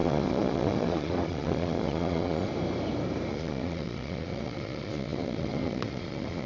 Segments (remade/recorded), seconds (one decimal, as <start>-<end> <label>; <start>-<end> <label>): 0.0-2.5 remade; 2.5-3.3 recorded; 3.3-6.5 remade